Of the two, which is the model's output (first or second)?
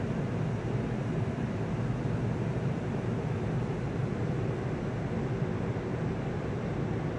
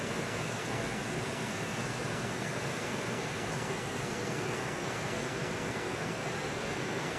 second